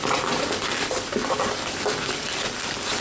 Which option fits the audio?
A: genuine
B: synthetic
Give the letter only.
A